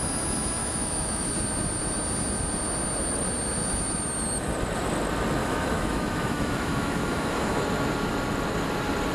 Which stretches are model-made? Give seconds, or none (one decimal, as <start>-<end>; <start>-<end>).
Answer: 0.6-1.3; 5.4-7.6